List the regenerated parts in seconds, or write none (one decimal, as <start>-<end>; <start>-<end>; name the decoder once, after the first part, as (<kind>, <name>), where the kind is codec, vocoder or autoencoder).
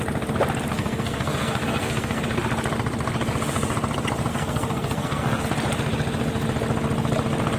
0.7-2.2 (codec, SNAC); 4.3-5.4